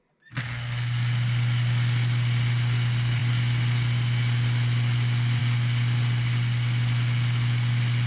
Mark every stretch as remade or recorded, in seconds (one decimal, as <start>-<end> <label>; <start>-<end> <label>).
0.0-8.1 recorded